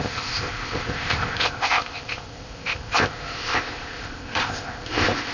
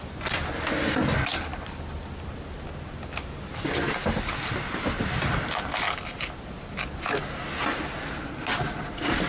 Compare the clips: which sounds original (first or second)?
second